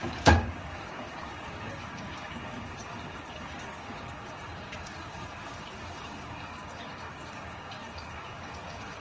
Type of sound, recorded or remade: remade